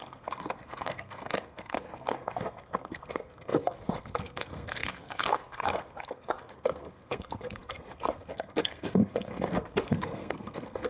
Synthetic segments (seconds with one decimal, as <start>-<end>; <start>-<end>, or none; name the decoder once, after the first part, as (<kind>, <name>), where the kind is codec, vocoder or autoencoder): 0.0-10.9 (codec, SNAC)